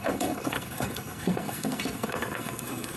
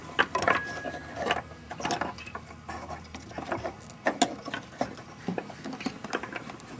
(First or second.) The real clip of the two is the second